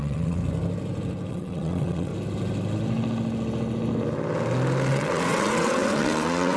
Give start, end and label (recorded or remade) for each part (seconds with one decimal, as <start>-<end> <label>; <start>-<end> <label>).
0.0-0.4 remade; 0.4-1.3 recorded; 1.3-2.1 remade; 2.1-4.9 recorded; 4.9-6.6 remade